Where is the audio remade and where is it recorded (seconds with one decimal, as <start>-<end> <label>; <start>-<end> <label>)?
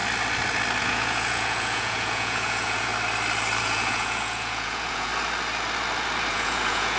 0.0-0.8 recorded; 0.8-2.9 remade; 2.9-3.6 recorded; 3.6-5.1 remade; 5.1-6.3 recorded; 6.3-7.0 remade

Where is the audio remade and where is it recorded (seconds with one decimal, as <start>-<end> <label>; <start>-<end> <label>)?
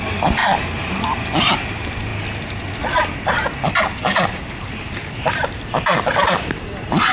0.0-7.1 recorded